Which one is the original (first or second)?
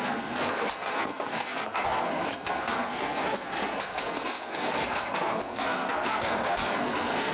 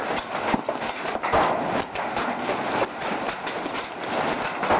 second